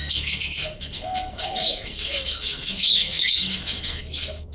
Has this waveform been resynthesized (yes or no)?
yes